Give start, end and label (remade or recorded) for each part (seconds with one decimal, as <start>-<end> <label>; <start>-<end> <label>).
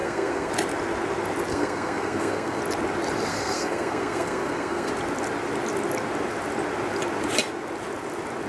0.0-0.5 remade; 0.5-1.5 recorded; 1.5-2.6 remade; 2.6-3.3 recorded; 3.3-4.9 remade; 4.9-8.5 recorded